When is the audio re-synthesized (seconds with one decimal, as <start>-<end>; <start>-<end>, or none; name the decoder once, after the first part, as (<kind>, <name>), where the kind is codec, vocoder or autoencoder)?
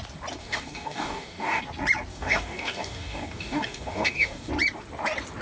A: 0.4-1.6 (codec, DAC); 2.1-4.5